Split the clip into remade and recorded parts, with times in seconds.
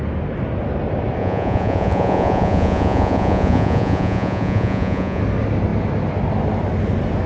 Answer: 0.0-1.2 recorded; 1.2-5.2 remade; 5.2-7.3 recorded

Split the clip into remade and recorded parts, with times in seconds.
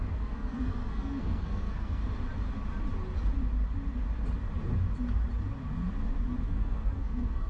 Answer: 0.0-2.0 remade; 2.0-6.4 recorded; 6.4-7.5 remade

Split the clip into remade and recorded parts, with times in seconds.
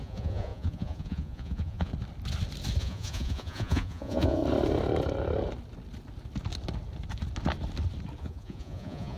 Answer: 0.0-1.9 remade; 1.9-2.8 recorded; 2.8-4.4 remade; 4.4-8.2 recorded; 8.2-9.2 remade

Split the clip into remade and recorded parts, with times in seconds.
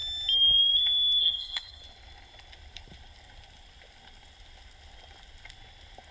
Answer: 0.0-1.2 recorded; 1.2-1.8 remade; 1.8-6.1 recorded